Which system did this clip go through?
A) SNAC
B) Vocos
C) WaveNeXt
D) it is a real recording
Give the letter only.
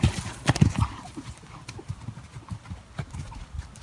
D